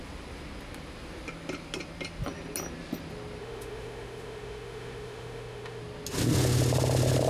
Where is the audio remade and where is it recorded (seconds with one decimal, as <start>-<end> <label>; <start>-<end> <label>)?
0.0-3.4 recorded; 3.4-5.8 remade; 5.8-7.3 recorded